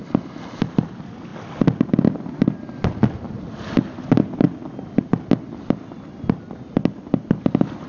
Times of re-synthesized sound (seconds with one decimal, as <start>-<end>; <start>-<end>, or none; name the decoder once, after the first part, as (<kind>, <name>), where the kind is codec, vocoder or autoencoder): none